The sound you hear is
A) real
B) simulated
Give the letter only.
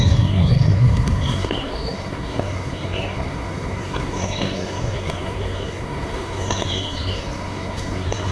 B